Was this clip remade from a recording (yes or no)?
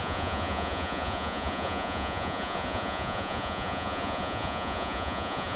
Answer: yes